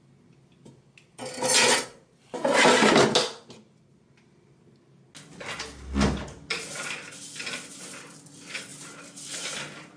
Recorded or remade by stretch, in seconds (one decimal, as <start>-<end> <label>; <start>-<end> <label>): 0.0-10.0 recorded

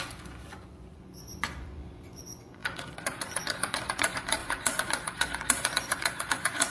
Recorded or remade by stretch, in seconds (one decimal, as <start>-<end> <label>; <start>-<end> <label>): 0.0-6.7 remade

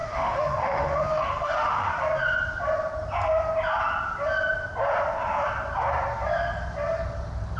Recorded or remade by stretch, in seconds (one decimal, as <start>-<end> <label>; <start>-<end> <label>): 0.0-1.9 remade; 1.9-7.6 recorded

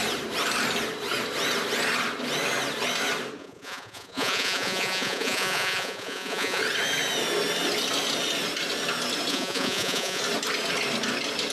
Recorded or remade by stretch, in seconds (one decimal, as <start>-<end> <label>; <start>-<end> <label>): 0.0-3.4 recorded; 3.4-6.6 remade; 6.6-9.3 recorded; 9.3-10.2 remade; 10.2-11.5 recorded

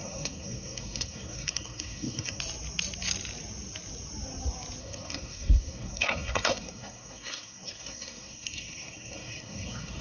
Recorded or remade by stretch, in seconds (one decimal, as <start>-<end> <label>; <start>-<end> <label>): 0.0-2.4 remade; 2.4-4.8 recorded; 4.8-10.0 remade

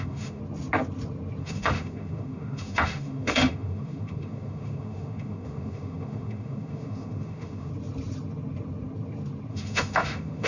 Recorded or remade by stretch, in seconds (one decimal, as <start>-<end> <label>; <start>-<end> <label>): 0.0-0.4 remade; 0.4-1.4 recorded; 1.4-7.7 remade; 7.7-9.5 recorded; 9.5-10.5 remade

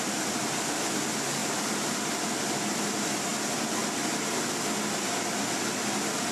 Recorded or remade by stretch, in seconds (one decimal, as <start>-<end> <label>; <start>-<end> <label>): 0.0-6.3 recorded